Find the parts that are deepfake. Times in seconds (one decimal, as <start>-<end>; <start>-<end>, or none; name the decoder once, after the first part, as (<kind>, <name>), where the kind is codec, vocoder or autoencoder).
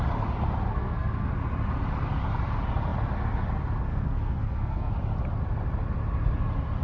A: 0.7-1.3 (codec, SNAC); 3.9-4.9